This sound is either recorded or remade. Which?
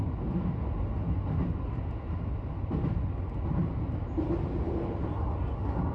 recorded